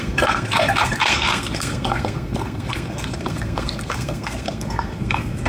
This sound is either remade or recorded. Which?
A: remade